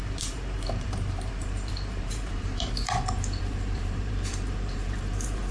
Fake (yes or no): yes